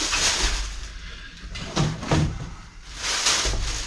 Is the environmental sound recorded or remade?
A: recorded